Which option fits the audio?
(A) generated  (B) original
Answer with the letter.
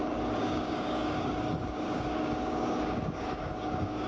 A